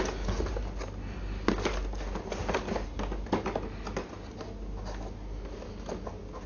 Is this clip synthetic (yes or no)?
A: no